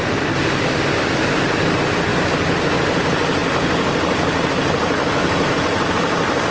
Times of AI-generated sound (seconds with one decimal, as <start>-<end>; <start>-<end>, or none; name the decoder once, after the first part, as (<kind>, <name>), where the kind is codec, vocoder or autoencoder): 2.1-2.7 (vocoder, BigVGAN v2); 5.2-5.9